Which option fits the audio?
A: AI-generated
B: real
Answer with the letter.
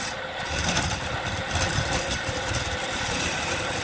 B